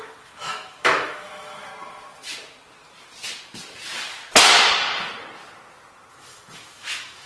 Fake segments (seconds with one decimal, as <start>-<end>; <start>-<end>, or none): 0.0-1.7; 6.1-7.3